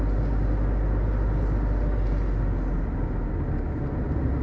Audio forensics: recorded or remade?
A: recorded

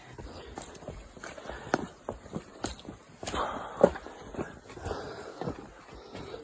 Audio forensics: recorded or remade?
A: recorded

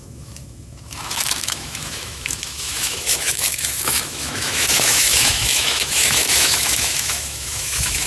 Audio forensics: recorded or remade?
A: remade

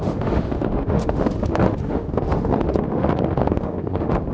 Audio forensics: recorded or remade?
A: remade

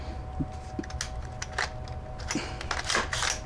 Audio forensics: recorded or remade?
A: recorded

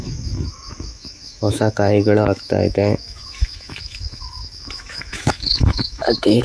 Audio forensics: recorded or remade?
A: remade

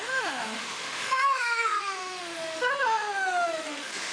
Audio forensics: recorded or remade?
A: remade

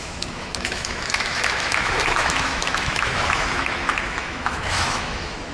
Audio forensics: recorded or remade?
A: remade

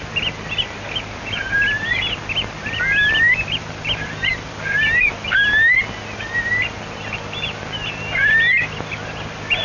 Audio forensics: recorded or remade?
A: recorded